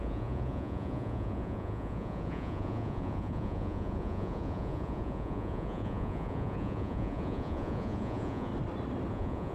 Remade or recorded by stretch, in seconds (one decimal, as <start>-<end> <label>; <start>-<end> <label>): 0.0-8.5 remade; 8.5-9.1 recorded; 9.1-9.5 remade